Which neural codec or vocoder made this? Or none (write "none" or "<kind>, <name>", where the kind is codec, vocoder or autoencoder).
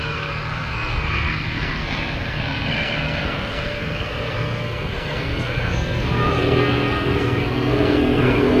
codec, SNAC